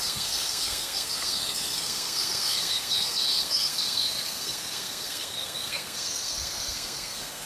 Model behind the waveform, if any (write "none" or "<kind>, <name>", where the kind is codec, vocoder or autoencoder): codec, SNAC